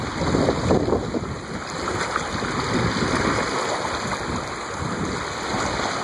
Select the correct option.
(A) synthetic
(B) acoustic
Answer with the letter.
B